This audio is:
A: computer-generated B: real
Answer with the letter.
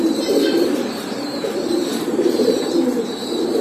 A